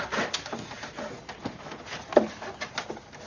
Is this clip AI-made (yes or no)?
no